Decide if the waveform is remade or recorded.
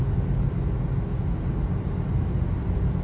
recorded